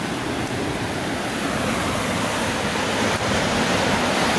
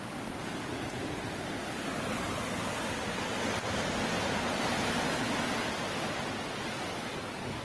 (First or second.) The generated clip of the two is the first